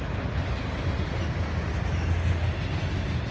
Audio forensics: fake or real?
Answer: real